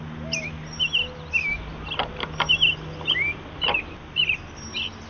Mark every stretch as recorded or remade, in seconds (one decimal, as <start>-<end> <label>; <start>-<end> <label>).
0.0-5.1 recorded